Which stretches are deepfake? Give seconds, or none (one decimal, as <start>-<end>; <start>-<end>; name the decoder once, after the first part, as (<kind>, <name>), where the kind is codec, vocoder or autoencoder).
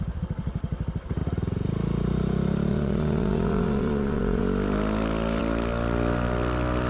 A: 2.7-4.4 (vocoder, Vocos)